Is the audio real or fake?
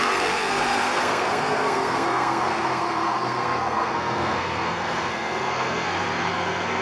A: fake